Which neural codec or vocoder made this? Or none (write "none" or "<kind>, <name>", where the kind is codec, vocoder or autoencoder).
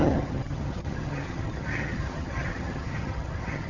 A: vocoder, HiFi-GAN